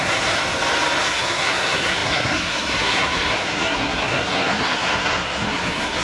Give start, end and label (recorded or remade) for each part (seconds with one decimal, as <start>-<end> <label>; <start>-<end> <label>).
0.0-0.4 remade; 0.4-1.0 recorded; 1.0-6.0 remade